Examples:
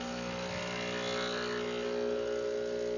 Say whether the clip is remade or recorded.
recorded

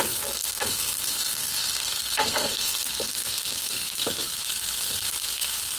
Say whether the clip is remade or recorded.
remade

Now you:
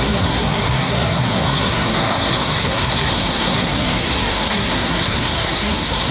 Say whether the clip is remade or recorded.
remade